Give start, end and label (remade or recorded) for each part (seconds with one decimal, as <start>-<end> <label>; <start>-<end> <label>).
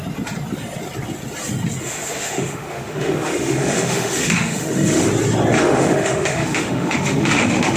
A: 0.0-1.8 recorded; 1.8-5.1 remade; 5.1-5.6 recorded; 5.6-7.8 remade